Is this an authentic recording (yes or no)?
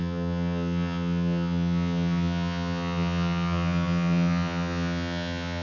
no